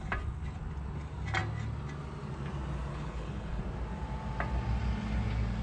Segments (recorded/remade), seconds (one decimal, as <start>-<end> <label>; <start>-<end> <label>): 0.0-2.9 recorded; 2.9-3.6 remade; 3.6-5.6 recorded